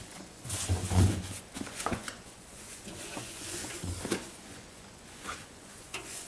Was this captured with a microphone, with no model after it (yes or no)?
no